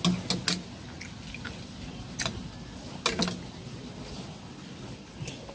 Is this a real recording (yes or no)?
yes